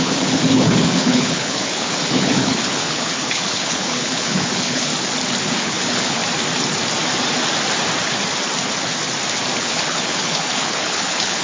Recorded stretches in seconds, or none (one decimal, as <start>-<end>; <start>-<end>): 4.9-5.4; 6.2-9.6